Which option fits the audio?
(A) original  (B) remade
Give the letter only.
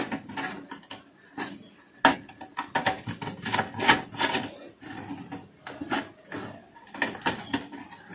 A